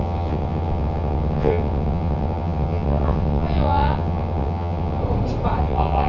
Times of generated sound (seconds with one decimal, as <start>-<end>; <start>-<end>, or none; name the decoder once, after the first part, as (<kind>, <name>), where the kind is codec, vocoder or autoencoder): 0.0-5.0 (vocoder, WaveNeXt); 5.6-6.1

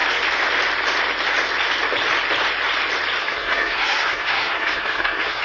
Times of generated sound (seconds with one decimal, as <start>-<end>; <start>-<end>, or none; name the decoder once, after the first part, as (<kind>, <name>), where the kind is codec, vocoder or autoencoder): 3.2-5.4 (codec, SNAC)

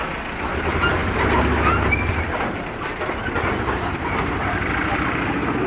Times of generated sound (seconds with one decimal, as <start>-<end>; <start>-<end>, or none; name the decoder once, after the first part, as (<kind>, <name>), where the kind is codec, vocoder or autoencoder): none

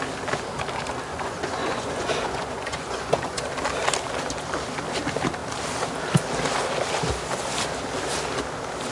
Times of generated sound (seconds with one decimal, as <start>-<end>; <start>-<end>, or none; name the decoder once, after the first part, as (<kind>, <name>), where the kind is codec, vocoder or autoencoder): 1.1-3.4 (vocoder, Vocos)

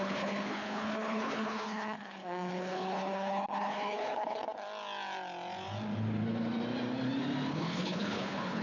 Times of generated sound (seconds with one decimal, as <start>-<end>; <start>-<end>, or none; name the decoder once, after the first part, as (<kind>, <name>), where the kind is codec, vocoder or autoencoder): 0.0-4.4 (codec, HILCodec); 7.5-8.6